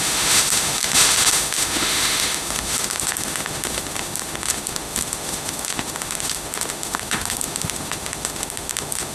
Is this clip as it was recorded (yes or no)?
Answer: no